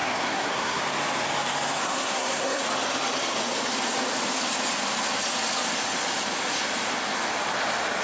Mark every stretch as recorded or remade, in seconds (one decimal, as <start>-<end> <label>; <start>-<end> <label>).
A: 0.0-0.8 remade; 0.8-1.8 recorded; 1.8-2.6 remade; 2.6-8.0 recorded